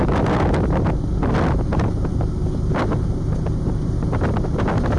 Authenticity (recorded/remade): recorded